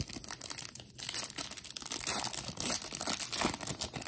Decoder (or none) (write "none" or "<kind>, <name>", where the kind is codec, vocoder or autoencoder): none